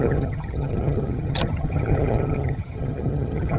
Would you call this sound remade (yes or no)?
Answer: yes